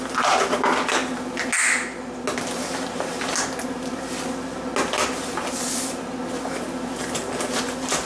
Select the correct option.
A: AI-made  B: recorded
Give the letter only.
B